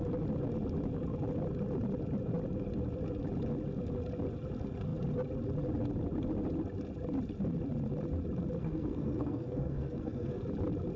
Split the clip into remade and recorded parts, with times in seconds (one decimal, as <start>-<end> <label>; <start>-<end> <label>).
0.0-8.6 recorded; 8.6-10.5 remade; 10.5-11.0 recorded